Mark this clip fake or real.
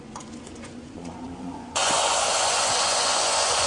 fake